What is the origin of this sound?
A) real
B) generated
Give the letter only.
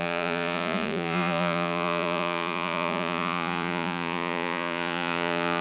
B